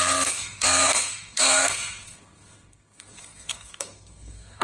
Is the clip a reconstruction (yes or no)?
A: yes